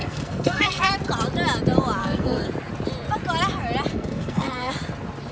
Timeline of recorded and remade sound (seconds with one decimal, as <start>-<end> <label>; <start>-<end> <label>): 0.0-0.9 remade; 0.9-2.0 recorded; 2.0-2.5 remade; 2.5-3.9 recorded; 3.9-4.7 remade; 4.7-5.3 recorded